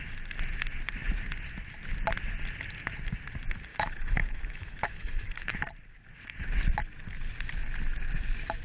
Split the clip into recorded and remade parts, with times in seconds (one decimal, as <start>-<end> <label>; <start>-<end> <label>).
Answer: 0.0-3.7 recorded; 3.7-5.6 remade; 5.6-8.6 recorded